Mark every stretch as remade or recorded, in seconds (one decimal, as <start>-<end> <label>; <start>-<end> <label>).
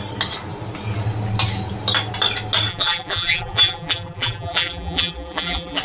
0.0-2.7 recorded; 2.7-5.8 remade